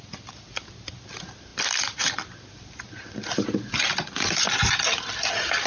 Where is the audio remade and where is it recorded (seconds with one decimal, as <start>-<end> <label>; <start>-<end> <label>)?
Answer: 0.0-5.7 recorded